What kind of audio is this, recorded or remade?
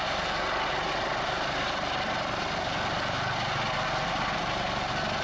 recorded